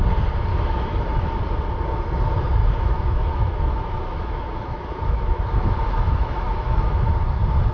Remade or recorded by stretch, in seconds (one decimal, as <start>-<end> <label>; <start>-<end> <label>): 0.0-0.5 recorded; 0.5-1.4 remade; 1.4-2.6 recorded; 2.6-7.1 remade; 7.1-7.7 recorded